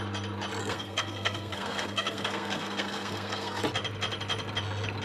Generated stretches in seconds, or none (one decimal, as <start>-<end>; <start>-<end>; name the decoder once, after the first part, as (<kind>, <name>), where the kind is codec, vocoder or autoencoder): 0.6-3.6 (codec, SNAC)